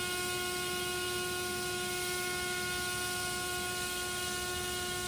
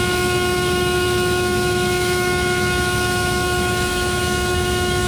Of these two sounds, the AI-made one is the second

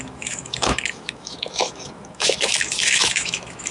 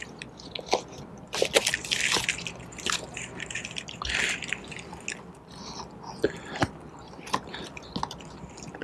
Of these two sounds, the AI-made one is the first